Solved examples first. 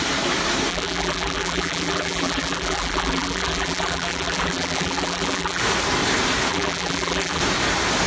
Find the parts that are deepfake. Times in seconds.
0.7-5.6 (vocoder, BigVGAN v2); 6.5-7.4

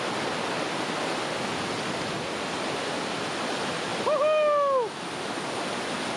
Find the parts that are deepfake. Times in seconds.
none

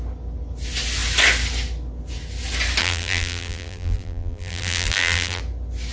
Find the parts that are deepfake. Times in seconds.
2.8-5.4 (vocoder, BigVGAN v2)

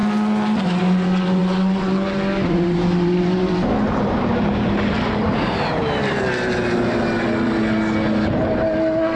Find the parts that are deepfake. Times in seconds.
1.4-6.5 (vocoder, BigVGAN v2)

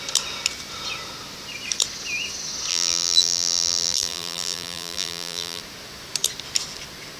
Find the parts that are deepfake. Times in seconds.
2.7-5.6 (vocoder, BigVGAN v2)

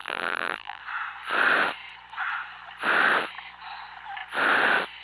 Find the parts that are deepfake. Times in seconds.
0.0-0.8 (vocoder, BigVGAN v2)

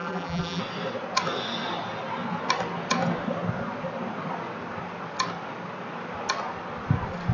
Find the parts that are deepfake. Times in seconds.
0.0-0.6 (vocoder, BigVGAN v2)